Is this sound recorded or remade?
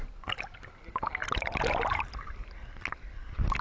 recorded